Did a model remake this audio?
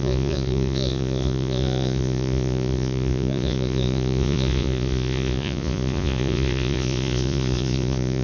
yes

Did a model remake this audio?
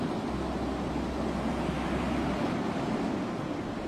no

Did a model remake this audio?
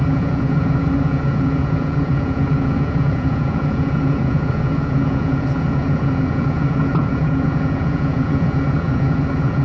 yes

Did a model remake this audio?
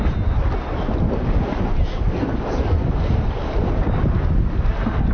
no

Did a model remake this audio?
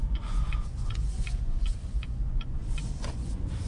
yes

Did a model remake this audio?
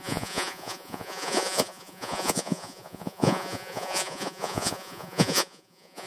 yes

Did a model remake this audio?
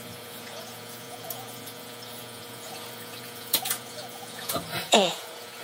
yes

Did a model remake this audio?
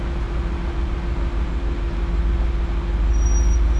no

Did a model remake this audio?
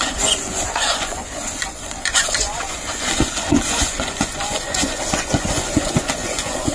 yes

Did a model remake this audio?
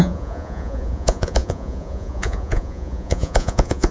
yes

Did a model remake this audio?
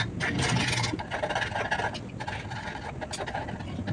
no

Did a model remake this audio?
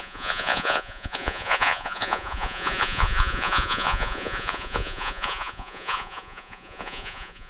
yes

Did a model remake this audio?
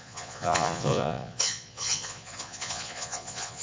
yes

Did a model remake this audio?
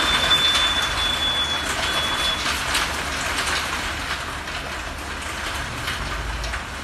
no